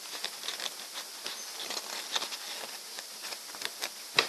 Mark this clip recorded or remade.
recorded